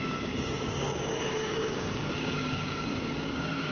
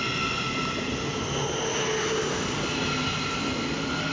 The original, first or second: second